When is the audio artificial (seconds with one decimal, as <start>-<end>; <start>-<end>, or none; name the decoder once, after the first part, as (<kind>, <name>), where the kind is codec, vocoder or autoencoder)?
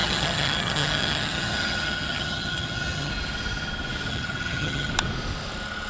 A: 0.0-3.1 (vocoder, HiFi-GAN); 4.1-4.9